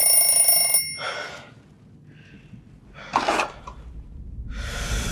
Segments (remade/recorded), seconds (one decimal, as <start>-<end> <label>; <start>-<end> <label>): 0.0-5.1 recorded